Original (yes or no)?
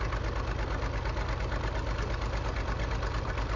yes